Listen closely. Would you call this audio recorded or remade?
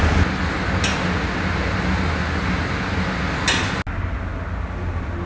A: recorded